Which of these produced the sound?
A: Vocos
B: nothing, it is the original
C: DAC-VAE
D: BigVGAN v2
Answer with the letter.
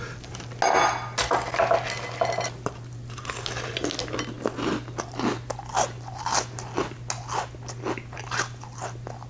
B